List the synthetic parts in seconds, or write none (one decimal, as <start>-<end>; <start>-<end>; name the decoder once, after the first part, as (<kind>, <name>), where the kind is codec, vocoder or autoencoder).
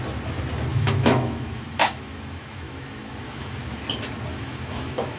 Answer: 0.7-3.8 (autoencoder, DAC-VAE); 4.3-5.2